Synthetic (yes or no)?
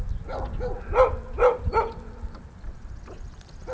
no